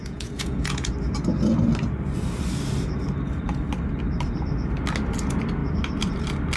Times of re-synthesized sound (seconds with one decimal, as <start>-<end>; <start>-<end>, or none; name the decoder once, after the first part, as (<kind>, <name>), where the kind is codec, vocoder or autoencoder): 0.0-0.9 (vocoder, Vocos)